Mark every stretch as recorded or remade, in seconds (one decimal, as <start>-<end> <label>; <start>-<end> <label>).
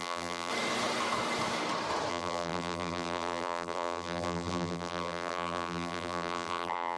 0.0-0.5 remade; 0.5-2.1 recorded; 2.1-7.0 remade